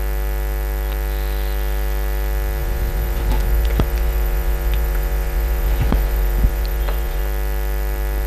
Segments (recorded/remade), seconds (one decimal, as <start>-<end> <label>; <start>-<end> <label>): 0.0-2.6 recorded; 2.6-7.2 remade; 7.2-8.3 recorded

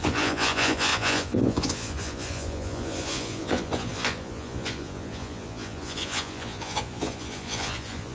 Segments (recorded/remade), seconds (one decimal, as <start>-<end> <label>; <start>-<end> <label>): 0.0-8.1 remade

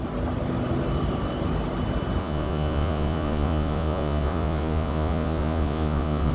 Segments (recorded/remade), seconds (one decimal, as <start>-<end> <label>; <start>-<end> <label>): 0.0-2.2 recorded; 2.2-6.3 remade

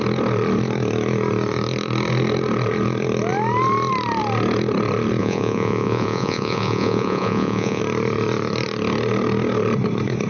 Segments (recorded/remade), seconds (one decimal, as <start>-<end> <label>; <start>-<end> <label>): 0.0-5.2 recorded; 5.2-7.8 remade; 7.8-10.3 recorded